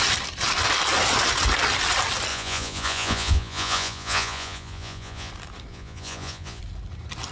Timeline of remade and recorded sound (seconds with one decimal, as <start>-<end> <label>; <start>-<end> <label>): 0.0-2.3 recorded; 2.3-5.3 remade; 5.3-5.7 recorded; 5.7-6.6 remade; 6.6-7.3 recorded